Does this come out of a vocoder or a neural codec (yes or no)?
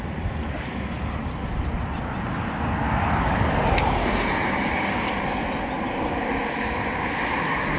no